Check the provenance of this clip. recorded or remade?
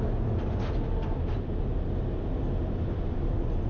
recorded